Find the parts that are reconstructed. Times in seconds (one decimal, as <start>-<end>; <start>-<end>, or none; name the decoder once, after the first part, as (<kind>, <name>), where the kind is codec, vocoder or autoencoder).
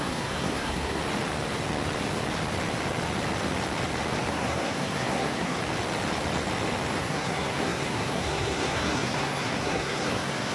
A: 0.0-1.0 (codec, SNAC); 4.3-5.6; 7.0-10.5